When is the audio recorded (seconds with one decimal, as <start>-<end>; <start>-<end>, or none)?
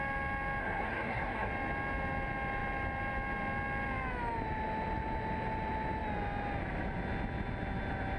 0.0-0.6; 1.5-8.2